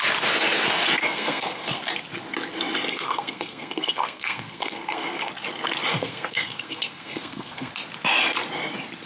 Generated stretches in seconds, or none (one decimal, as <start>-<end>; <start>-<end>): 1.0-1.9; 2.9-5.3; 5.9-7.7

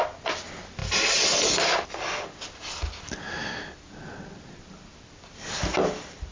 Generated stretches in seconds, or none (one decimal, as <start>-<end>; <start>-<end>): none

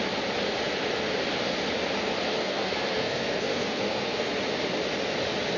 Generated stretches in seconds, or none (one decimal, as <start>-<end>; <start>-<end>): 2.4-4.3

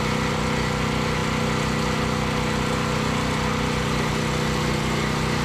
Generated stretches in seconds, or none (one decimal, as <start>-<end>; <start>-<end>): none

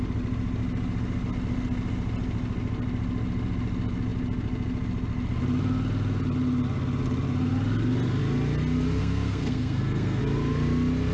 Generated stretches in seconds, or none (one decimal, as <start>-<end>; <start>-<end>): 9.0-10.2